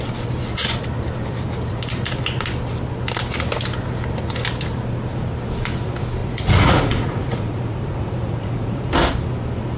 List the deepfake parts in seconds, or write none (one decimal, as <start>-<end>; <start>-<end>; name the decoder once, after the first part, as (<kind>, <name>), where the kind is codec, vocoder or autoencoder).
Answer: 6.2-8.9 (vocoder, Vocos)